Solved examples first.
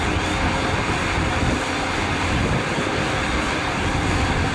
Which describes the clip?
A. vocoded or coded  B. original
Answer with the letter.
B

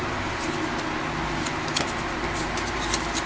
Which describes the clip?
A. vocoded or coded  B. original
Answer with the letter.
B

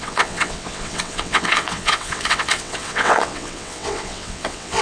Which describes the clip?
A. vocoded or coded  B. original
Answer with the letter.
A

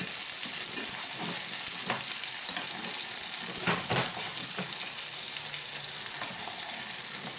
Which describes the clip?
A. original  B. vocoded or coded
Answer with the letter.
A